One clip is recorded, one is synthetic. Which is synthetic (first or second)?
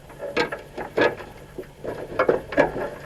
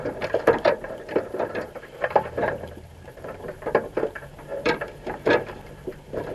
second